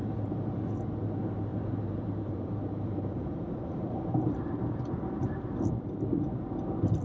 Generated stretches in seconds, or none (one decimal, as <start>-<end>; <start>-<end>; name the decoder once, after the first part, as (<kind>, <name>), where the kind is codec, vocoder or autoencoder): 0.0-0.6 (vocoder, BigVGAN v2); 1.5-5.7